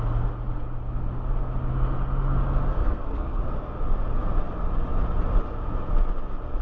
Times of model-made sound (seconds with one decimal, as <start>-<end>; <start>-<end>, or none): 2.7-3.4